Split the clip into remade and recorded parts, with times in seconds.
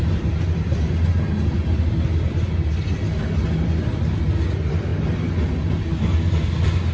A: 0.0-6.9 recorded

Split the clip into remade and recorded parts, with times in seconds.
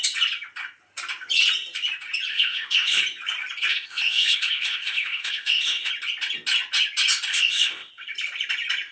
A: 0.0-2.3 recorded; 2.3-3.0 remade; 3.0-3.7 recorded; 3.7-5.9 remade; 5.9-7.3 recorded; 7.3-7.9 remade; 7.9-8.9 recorded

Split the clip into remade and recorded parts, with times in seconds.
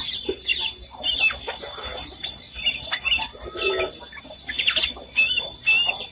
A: 0.0-6.1 recorded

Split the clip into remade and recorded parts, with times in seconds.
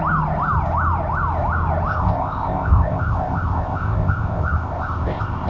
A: 0.0-1.9 recorded; 1.9-5.5 remade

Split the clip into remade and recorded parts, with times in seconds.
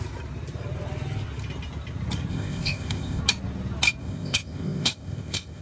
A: 0.0-2.3 recorded; 2.3-3.2 remade; 3.2-4.0 recorded; 4.0-5.6 remade